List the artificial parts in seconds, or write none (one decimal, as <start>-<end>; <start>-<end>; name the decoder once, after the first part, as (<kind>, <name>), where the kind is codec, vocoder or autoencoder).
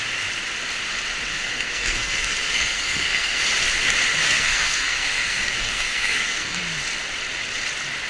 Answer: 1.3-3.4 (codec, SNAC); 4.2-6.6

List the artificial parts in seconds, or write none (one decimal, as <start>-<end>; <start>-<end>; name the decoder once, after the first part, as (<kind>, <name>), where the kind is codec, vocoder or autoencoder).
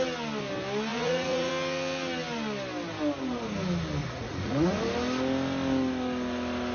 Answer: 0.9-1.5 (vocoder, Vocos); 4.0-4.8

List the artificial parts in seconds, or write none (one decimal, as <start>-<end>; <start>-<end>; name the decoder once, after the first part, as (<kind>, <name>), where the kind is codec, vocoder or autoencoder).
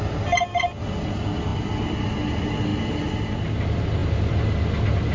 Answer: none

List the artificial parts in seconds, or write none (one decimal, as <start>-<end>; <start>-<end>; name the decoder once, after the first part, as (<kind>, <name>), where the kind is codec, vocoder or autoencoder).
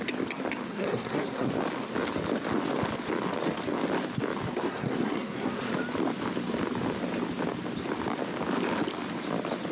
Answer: 0.7-1.5 (codec, SNAC); 4.5-5.6